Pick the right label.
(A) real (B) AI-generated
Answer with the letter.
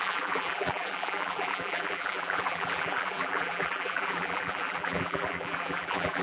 B